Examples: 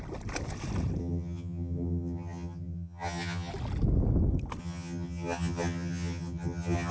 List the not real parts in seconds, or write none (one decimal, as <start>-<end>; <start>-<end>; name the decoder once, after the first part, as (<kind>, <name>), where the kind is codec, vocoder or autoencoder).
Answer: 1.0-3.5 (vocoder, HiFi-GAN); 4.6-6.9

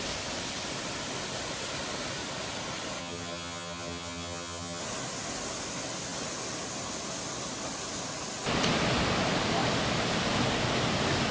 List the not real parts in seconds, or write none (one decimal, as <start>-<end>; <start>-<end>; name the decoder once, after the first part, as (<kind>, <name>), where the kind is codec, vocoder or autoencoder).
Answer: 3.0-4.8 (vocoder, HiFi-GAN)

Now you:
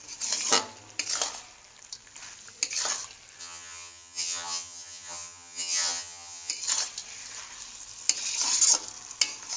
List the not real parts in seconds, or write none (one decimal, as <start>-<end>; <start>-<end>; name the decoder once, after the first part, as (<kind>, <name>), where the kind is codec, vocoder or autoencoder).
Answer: 3.4-6.5 (vocoder, HiFi-GAN)

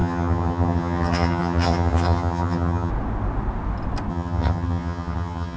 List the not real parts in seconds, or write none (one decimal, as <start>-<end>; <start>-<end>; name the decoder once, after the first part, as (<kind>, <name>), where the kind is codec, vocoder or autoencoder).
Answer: 0.0-2.9 (vocoder, HiFi-GAN); 4.1-5.6

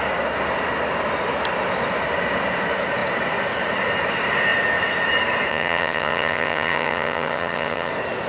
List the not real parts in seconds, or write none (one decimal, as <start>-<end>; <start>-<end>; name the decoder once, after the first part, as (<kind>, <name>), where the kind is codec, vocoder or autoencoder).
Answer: 5.5-7.9 (vocoder, HiFi-GAN)

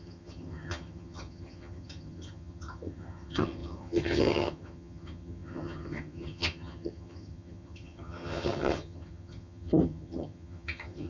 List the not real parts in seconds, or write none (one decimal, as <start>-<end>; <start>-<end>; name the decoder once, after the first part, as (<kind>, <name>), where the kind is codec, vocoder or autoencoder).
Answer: 0.0-11.1 (vocoder, HiFi-GAN)

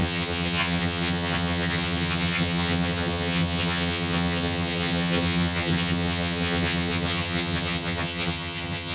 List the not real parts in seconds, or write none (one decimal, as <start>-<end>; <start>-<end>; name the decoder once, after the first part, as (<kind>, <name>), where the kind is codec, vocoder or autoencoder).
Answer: 0.0-8.9 (vocoder, HiFi-GAN)

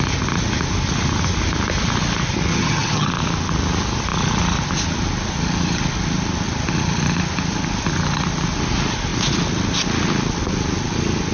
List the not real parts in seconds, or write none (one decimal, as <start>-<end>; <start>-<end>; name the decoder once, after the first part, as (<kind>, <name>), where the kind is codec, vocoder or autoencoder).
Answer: 2.5-3.1 (vocoder, HiFi-GAN)